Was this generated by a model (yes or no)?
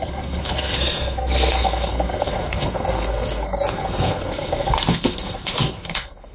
yes